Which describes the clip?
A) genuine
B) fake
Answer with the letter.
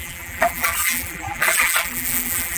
B